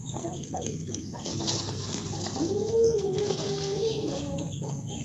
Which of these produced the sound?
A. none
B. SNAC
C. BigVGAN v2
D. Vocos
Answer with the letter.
B